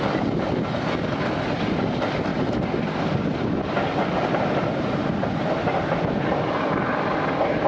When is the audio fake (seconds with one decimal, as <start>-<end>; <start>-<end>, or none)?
none